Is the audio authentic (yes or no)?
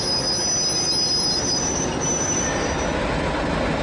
yes